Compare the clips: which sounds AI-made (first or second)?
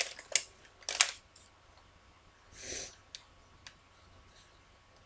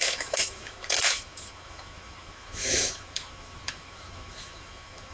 second